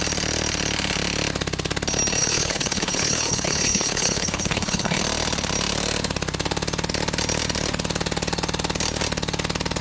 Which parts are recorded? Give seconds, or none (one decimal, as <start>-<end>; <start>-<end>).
0.0-2.2; 5.0-9.8